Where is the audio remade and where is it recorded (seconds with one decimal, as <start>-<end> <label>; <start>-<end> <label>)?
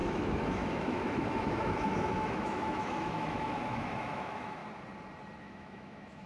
0.0-4.6 remade; 4.6-5.4 recorded; 5.4-6.3 remade